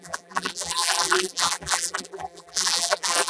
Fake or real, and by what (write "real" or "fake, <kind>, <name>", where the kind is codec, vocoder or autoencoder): fake, vocoder, BigVGAN v2